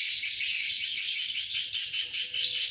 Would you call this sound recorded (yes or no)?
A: no